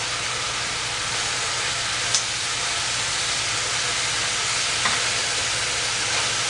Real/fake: real